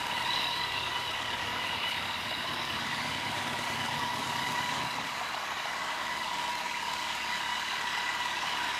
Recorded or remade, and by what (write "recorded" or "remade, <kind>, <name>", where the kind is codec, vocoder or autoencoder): remade, codec, DAC